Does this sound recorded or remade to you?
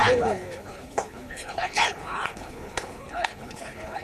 remade